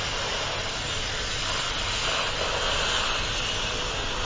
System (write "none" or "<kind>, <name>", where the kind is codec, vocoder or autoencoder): none